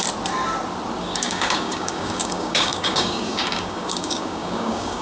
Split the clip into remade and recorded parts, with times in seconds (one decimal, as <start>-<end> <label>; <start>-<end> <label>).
0.0-1.0 recorded; 1.0-5.0 remade